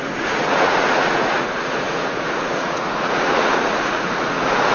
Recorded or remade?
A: remade